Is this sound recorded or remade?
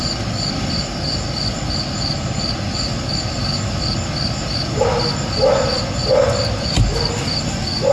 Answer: recorded